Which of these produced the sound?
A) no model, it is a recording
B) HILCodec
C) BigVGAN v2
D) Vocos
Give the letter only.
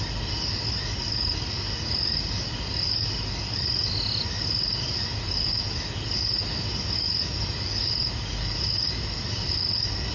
A